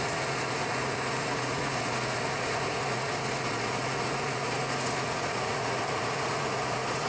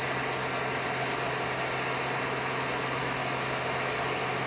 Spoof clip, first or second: first